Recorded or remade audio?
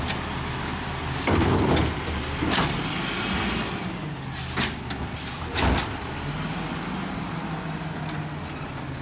recorded